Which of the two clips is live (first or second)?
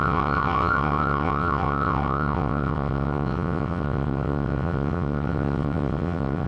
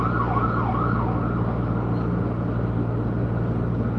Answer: second